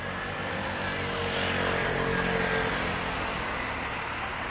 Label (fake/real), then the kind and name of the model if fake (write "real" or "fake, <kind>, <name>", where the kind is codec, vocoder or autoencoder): real